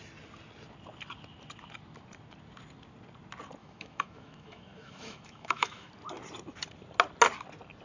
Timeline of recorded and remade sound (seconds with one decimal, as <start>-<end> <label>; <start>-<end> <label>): 0.0-3.6 recorded; 3.6-5.9 remade; 5.9-7.8 recorded